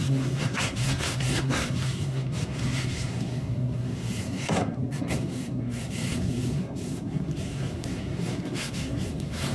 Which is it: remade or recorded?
remade